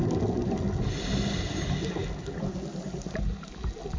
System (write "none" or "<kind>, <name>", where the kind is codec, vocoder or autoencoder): none